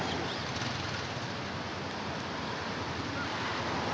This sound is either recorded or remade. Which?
recorded